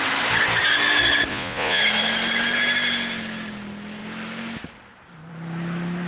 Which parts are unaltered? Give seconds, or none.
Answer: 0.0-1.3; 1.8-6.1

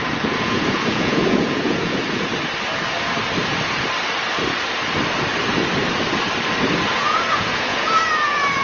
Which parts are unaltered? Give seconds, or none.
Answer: 2.3-7.0

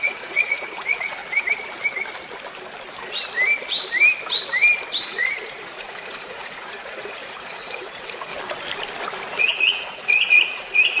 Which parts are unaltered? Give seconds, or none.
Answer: 1.2-5.0; 8.3-9.4

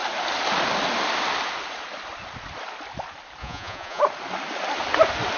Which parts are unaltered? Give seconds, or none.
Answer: 0.0-3.4; 4.0-5.4

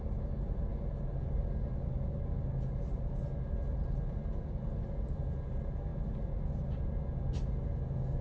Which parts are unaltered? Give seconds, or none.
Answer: 0.0-8.2

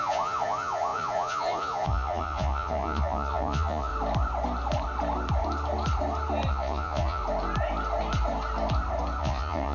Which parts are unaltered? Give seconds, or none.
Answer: 3.9-6.5; 7.2-9.2

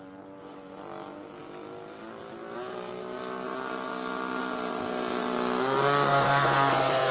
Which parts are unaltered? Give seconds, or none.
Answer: 0.0-6.1

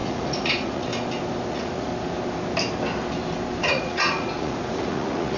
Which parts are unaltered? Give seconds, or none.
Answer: 0.9-1.5; 1.9-3.6